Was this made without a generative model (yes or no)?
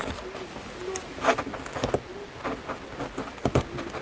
yes